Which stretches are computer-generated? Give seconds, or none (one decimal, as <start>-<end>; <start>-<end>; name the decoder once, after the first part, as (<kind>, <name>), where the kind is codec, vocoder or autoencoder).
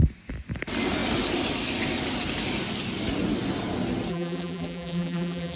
4.1-5.6 (vocoder, BigVGAN v2)